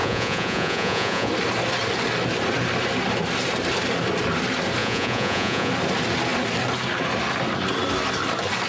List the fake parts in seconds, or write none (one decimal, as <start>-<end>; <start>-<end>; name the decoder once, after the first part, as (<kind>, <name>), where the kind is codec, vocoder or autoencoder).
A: 0.0-1.3 (vocoder, Vocos); 4.8-5.7